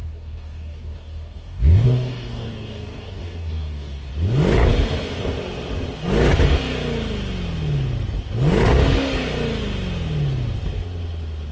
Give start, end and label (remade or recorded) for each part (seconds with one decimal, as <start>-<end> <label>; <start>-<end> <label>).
0.0-4.1 remade; 4.1-11.5 recorded